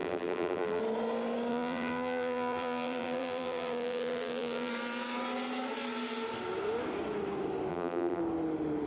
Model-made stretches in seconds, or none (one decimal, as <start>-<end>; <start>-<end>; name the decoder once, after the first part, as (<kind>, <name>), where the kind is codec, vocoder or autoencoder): 0.0-0.8 (vocoder, BigVGAN v2); 1.5-4.7; 7.7-8.2